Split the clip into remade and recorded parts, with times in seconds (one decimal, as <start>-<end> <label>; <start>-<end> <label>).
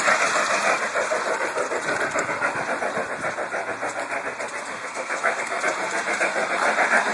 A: 0.0-4.7 recorded; 4.7-5.6 remade; 5.6-7.1 recorded